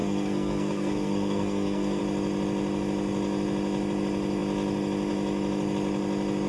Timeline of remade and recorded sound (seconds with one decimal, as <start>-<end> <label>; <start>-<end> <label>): 0.0-2.0 remade; 2.0-6.5 recorded